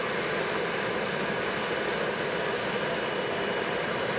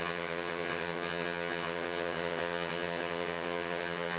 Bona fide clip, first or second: first